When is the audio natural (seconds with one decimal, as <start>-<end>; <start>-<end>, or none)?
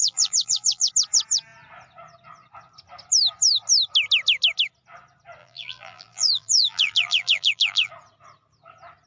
0.9-5.4; 7.9-9.1